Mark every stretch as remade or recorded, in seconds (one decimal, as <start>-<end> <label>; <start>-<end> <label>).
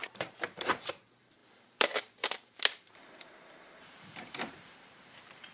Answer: 0.0-5.5 remade